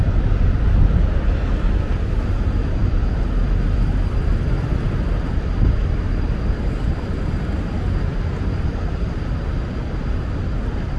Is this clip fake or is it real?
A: fake